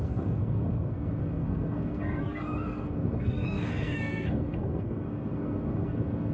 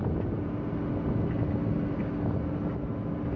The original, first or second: second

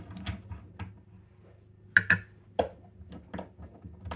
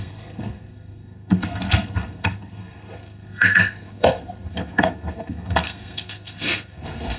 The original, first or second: first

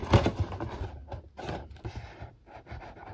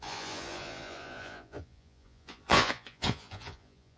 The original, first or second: first